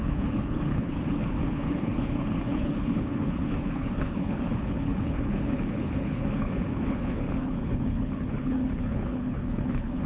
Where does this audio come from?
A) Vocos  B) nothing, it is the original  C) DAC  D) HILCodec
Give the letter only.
D